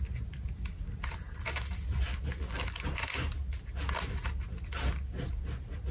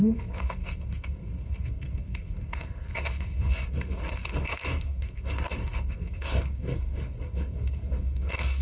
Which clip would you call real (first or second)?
first